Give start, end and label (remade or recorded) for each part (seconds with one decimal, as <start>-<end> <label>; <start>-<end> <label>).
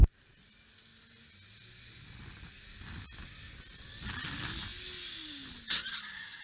0.0-6.4 recorded